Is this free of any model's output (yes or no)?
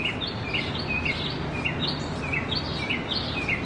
yes